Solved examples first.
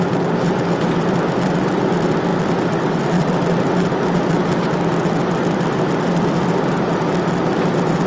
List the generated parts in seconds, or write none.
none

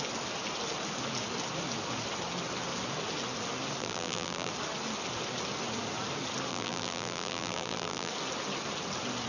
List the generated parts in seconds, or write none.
3.8-4.5 (vocoder, BigVGAN v2); 6.5-8.1

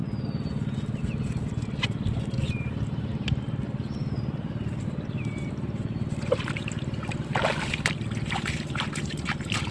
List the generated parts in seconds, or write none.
1.0-9.7 (vocoder, BigVGAN v2)